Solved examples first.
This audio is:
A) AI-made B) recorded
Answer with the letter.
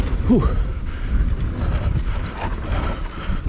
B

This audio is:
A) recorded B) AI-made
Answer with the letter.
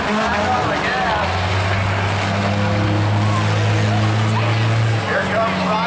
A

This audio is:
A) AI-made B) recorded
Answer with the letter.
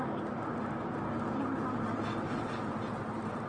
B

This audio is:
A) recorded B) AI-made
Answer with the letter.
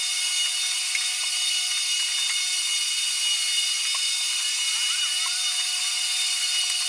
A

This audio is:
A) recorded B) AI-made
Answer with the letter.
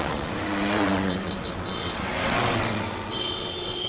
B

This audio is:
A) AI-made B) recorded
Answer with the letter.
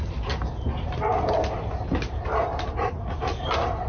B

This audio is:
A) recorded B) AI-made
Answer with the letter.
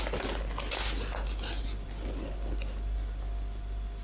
A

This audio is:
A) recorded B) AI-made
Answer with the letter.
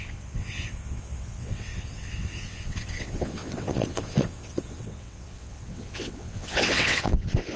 B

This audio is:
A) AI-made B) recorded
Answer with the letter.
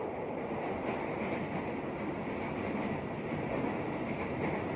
B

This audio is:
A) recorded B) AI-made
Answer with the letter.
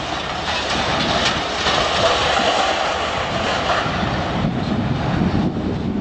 A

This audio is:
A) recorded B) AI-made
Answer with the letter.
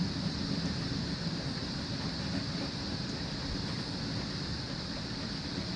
A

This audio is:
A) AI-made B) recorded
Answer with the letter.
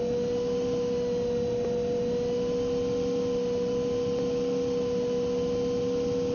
B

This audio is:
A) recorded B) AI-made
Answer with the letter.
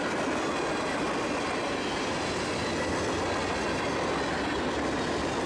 A